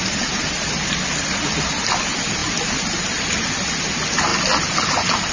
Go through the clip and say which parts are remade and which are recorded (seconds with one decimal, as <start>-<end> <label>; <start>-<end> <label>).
0.0-5.3 recorded